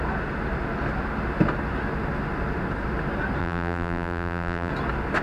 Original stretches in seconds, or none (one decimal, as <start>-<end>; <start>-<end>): 0.0-3.4; 4.7-5.2